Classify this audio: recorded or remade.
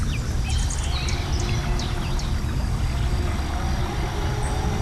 recorded